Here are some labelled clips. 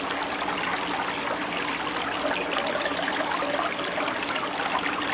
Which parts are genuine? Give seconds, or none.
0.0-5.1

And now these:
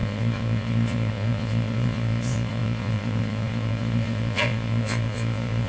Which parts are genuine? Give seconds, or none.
none

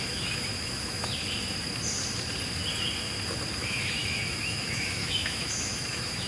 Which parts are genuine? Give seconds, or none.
1.1-3.5